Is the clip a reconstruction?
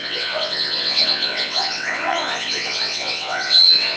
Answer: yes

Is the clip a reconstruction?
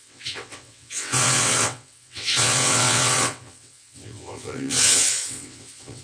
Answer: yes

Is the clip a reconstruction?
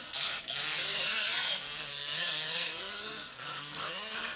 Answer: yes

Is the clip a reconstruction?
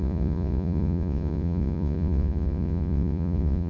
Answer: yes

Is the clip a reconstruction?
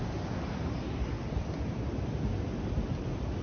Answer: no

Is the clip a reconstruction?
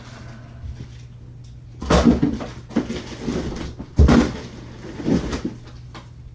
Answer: no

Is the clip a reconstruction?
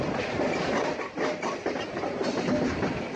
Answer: no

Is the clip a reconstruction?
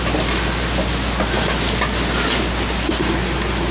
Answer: no